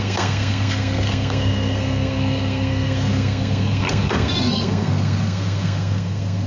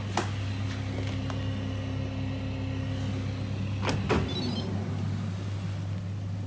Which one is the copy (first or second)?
first